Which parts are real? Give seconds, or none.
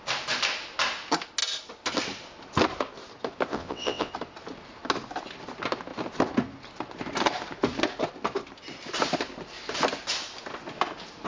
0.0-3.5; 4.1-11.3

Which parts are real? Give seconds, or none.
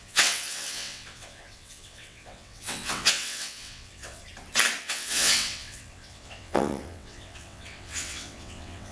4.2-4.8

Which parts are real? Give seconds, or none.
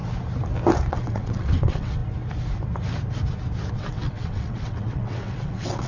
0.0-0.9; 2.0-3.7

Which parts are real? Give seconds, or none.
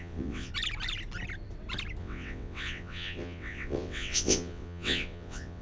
0.5-2.0